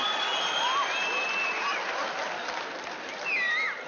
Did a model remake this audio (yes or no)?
no